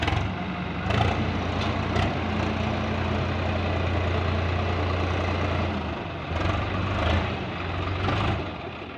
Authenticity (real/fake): real